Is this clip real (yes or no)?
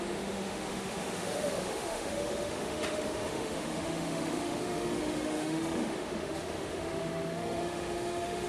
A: no